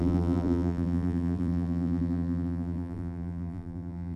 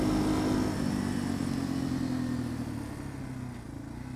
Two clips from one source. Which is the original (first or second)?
second